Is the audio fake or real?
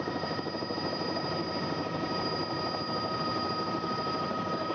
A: fake